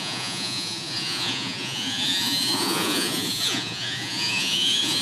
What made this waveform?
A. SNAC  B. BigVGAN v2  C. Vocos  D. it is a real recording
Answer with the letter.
C